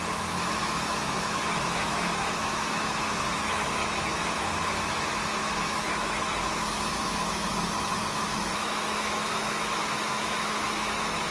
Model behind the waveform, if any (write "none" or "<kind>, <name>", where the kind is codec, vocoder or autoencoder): autoencoder, DAC-VAE